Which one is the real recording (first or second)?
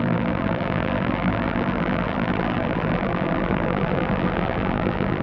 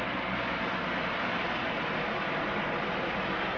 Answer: second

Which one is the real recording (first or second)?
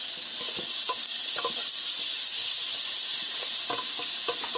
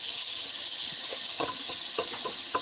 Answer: first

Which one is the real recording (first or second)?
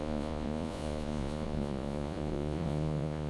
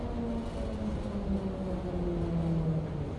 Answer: second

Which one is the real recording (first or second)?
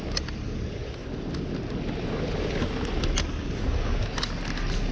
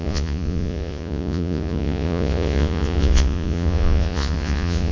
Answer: first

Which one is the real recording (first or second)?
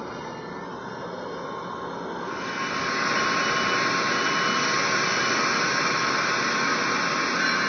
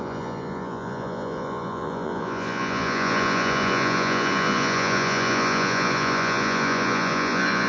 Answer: first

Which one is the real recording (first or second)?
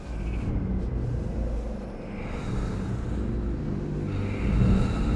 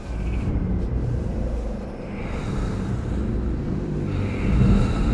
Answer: first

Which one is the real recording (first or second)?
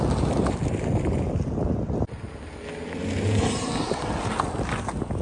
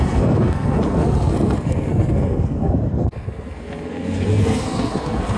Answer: first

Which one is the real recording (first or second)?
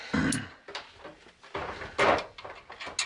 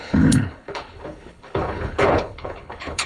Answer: first